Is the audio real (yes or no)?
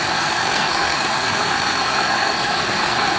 no